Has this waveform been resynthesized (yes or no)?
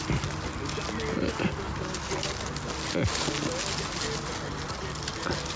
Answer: no